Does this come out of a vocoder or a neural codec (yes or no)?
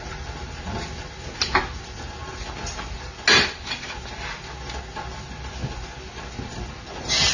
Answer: no